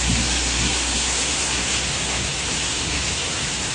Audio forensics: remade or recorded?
remade